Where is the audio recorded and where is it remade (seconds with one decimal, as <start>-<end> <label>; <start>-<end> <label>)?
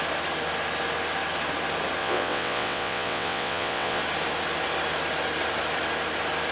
0.0-2.0 recorded; 2.0-4.0 remade; 4.0-6.5 recorded